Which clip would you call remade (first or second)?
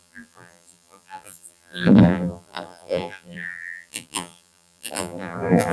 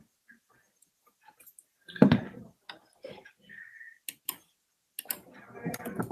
first